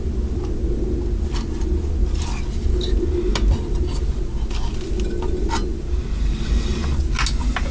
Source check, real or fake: real